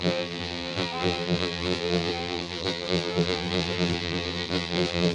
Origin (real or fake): fake